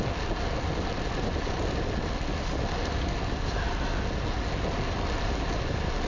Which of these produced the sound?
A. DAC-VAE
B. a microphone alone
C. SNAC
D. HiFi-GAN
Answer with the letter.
B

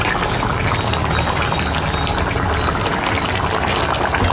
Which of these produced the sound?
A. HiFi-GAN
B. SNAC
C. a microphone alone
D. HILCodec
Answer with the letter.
C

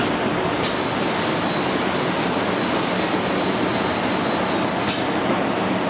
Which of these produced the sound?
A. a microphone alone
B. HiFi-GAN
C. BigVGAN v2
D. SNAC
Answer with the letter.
A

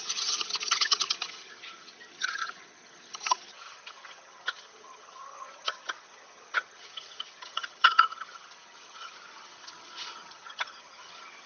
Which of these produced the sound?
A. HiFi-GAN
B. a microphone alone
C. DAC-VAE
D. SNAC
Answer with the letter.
A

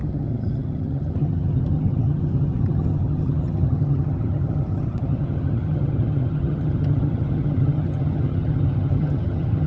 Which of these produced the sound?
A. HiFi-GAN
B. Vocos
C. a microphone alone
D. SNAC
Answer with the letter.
A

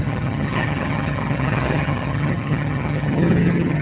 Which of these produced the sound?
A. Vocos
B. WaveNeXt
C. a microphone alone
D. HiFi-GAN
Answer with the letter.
D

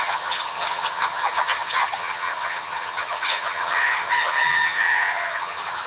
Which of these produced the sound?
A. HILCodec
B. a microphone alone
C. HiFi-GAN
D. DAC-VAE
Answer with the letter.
C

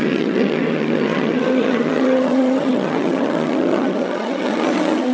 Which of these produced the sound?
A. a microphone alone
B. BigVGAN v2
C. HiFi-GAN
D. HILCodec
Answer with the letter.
C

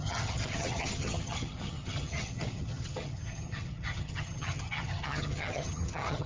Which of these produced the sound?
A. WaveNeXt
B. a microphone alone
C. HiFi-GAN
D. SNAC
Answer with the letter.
C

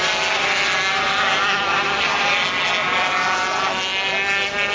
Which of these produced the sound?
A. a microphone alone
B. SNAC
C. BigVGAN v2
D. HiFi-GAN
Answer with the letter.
A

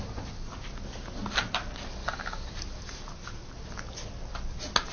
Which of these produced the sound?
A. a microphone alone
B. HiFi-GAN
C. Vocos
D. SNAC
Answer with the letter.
A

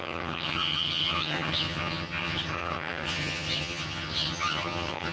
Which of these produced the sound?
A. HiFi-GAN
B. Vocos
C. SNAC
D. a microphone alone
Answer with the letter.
A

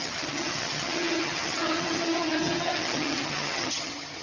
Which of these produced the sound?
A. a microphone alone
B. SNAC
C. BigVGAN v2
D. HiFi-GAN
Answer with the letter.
D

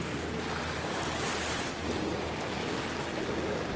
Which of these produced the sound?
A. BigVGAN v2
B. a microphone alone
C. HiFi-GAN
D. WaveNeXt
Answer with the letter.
B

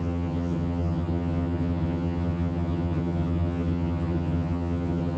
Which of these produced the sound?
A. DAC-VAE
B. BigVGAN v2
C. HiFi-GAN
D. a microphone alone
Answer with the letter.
C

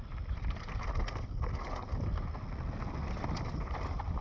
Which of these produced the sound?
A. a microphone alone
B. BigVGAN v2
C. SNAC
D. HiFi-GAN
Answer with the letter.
A